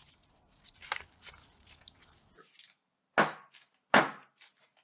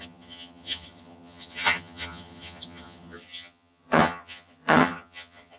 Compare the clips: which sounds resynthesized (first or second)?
second